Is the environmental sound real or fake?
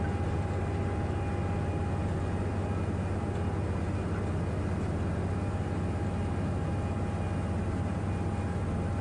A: real